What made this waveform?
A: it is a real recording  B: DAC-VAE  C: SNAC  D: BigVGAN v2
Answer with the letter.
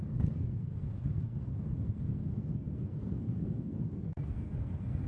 C